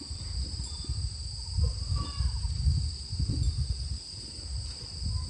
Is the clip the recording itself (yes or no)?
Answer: yes